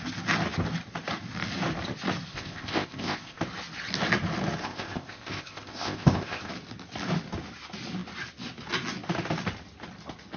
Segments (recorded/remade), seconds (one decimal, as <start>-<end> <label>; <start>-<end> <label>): 0.0-2.3 recorded; 2.3-3.4 remade; 3.4-4.6 recorded; 4.6-6.5 remade; 6.5-10.4 recorded